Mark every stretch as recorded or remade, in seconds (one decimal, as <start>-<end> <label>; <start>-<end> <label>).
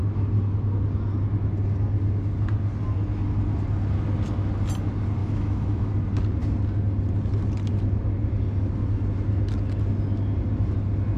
0.0-5.2 recorded; 5.2-5.9 remade; 5.9-11.2 recorded